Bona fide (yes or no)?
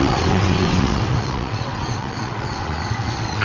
no